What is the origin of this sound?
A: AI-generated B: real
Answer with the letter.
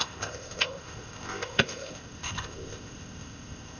A